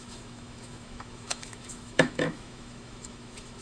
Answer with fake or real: fake